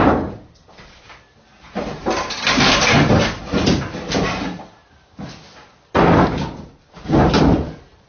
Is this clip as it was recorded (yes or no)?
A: yes